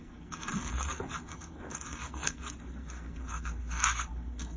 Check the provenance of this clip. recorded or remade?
remade